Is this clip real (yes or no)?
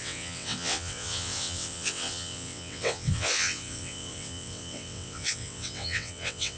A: no